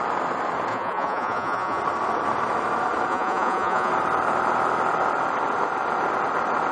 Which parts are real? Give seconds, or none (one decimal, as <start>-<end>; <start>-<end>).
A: 0.0-0.7; 1.8-3.1; 3.9-6.7